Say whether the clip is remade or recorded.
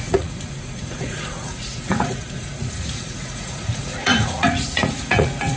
remade